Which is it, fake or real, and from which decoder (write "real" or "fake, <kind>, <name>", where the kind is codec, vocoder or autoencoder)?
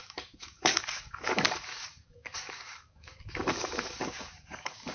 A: fake, codec, DAC